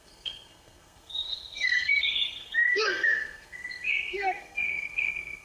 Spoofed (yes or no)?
yes